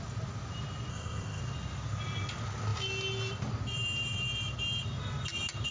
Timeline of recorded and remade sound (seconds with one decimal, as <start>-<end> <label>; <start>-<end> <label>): 0.0-0.9 recorded; 0.9-1.4 remade; 1.4-5.7 recorded